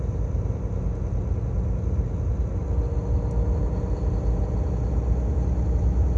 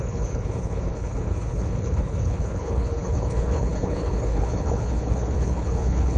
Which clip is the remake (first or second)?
second